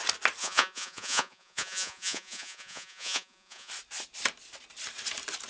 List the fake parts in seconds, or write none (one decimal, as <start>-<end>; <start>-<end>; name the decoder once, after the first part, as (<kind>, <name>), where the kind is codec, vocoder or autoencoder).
0.4-3.7 (vocoder, Vocos)